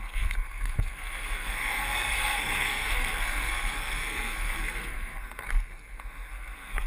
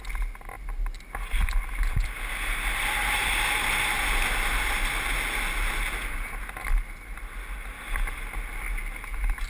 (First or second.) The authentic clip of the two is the second